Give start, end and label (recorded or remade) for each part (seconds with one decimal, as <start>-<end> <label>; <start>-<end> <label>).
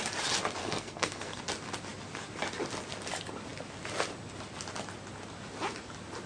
0.0-0.6 recorded; 0.6-1.4 remade; 1.4-6.3 recorded